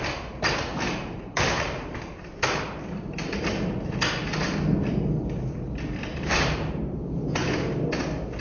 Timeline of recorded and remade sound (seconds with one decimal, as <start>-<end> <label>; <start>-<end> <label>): 0.0-0.7 recorded; 0.7-3.4 remade; 3.4-6.1 recorded; 6.1-6.8 remade; 6.8-8.4 recorded